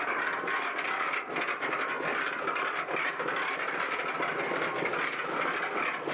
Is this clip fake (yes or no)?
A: no